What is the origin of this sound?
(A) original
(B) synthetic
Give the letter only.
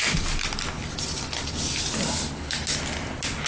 A